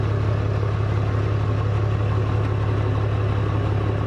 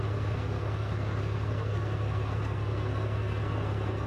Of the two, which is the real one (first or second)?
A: first